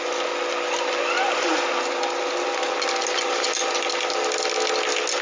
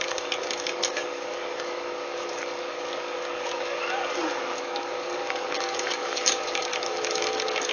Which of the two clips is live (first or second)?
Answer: first